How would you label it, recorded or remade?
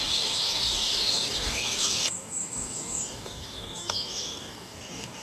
remade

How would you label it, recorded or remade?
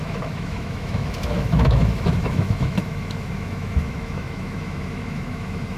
remade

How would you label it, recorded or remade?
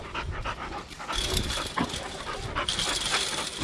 recorded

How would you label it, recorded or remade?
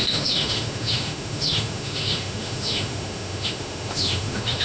remade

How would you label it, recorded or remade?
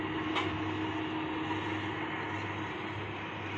recorded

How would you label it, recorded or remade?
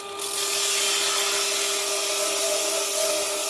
recorded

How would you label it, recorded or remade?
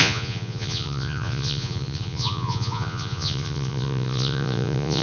remade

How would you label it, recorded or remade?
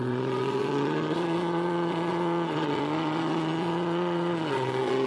remade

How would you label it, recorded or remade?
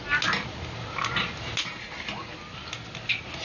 recorded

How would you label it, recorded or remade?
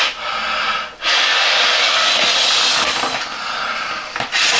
recorded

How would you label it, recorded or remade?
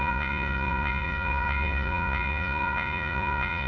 remade